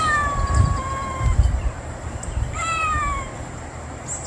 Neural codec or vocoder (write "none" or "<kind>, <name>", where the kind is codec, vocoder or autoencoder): vocoder, BigVGAN v2